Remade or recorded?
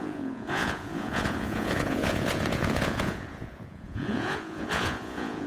remade